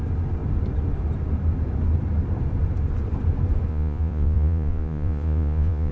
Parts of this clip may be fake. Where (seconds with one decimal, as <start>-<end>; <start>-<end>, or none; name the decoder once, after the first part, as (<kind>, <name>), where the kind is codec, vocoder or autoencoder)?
3.7-5.9 (vocoder, Vocos)